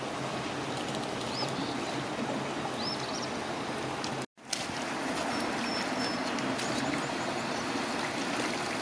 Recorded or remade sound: recorded